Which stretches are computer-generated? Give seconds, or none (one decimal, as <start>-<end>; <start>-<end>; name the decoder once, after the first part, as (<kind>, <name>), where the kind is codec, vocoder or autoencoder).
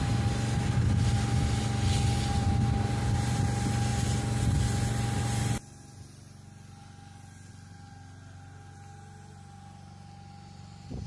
none